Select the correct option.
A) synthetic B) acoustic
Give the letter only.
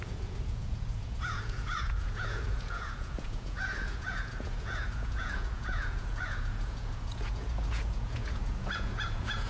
A